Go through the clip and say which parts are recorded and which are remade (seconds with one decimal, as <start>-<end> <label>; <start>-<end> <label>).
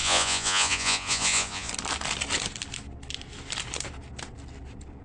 0.0-1.7 remade; 1.7-5.0 recorded